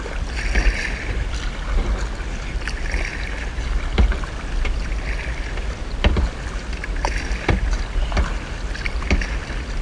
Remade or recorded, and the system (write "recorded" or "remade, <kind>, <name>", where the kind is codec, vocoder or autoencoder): recorded